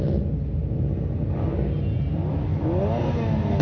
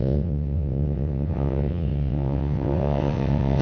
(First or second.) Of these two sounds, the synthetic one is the second